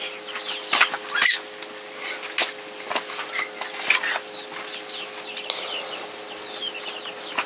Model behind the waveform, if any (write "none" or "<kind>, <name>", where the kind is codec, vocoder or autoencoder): none